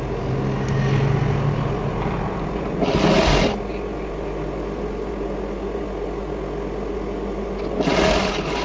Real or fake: real